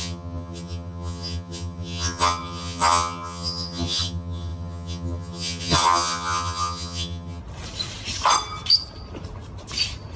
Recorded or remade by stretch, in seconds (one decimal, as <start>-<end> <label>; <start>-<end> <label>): 0.0-7.4 remade; 7.4-10.2 recorded